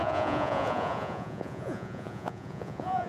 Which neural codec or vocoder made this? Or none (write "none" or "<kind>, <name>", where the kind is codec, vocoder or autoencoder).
vocoder, Vocos